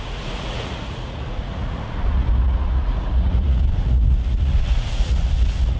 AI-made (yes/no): yes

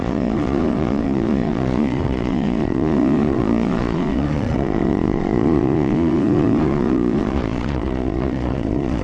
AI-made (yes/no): yes